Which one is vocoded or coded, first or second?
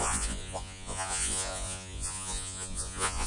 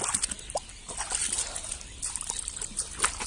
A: first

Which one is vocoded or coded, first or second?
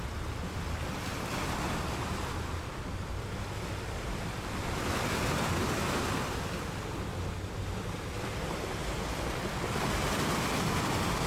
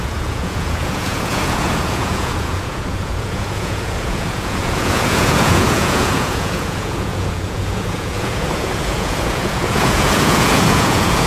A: second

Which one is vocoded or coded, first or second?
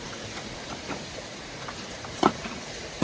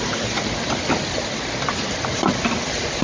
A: first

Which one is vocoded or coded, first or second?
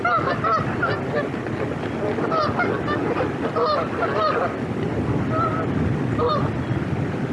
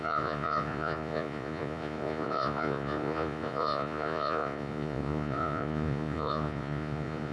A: second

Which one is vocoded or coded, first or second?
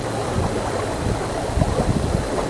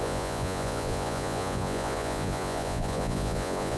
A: second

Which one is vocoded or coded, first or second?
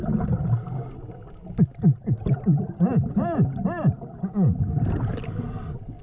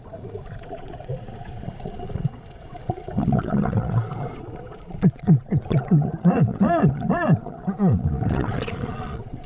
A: second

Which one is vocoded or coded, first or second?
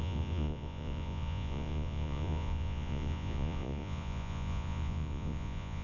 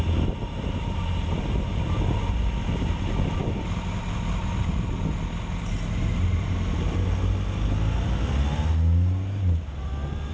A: first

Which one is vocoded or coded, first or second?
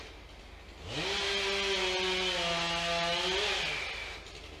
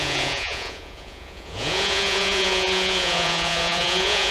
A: second